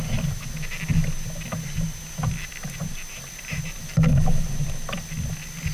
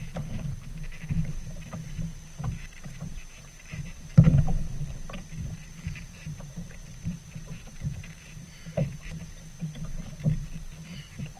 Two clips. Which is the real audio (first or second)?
first